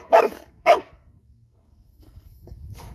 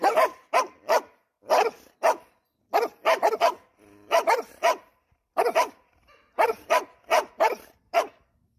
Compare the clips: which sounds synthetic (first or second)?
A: first